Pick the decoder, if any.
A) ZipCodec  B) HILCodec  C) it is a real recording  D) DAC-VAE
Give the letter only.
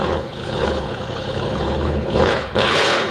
B